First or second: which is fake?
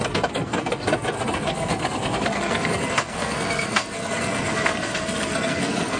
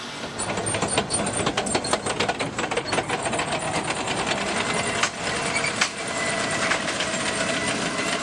first